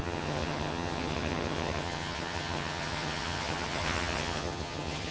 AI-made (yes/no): yes